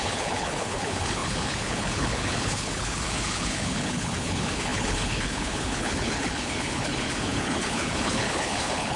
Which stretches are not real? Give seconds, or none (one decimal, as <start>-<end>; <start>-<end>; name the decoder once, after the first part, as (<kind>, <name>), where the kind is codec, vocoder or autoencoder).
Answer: 0.0-9.0 (codec, HILCodec)